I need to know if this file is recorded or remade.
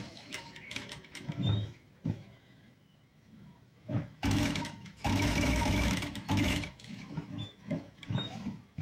remade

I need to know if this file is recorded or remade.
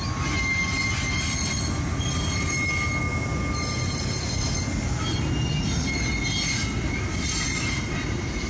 recorded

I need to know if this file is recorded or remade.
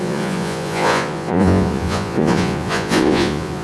remade